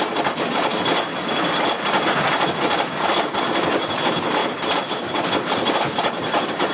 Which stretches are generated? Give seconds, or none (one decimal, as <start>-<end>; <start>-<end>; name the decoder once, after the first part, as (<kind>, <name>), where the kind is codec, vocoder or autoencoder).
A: none